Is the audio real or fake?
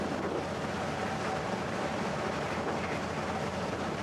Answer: real